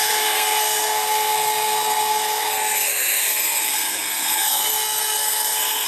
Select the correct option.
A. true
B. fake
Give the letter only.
B